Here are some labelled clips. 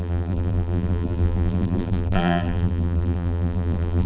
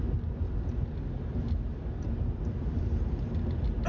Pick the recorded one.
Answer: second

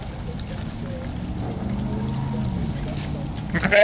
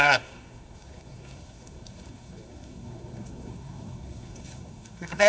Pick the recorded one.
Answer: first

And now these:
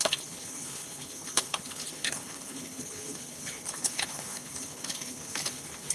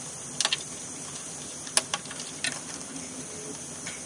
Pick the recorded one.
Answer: second